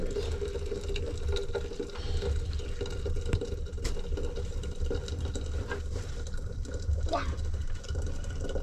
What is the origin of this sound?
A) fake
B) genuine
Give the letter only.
B